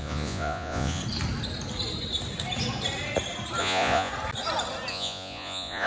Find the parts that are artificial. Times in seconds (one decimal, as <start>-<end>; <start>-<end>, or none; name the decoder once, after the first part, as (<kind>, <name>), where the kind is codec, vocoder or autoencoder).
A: 0.0-1.0 (vocoder, Vocos); 3.6-4.1; 4.9-5.9